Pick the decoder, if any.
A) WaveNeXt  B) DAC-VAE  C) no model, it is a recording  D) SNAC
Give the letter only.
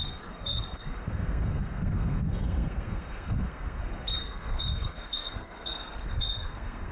D